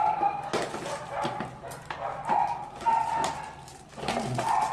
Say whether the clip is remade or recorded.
recorded